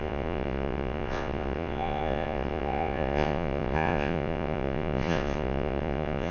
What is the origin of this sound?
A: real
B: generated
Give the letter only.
B